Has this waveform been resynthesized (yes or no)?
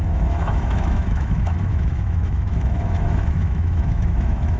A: yes